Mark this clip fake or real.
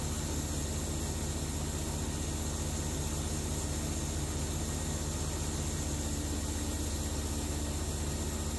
real